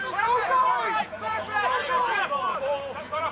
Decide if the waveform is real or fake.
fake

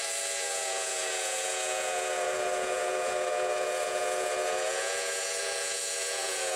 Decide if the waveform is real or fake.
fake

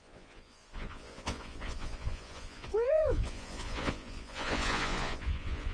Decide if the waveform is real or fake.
fake